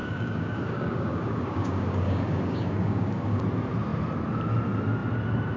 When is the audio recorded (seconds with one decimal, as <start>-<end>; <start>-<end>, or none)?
3.4-5.6

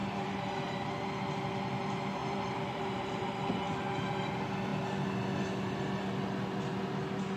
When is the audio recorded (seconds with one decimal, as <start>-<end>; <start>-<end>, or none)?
0.9-2.2; 3.5-7.4

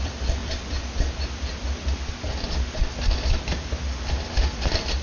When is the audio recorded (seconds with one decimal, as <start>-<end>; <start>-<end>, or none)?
0.0-5.0

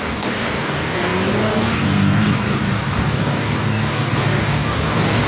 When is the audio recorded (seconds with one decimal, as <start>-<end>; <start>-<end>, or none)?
none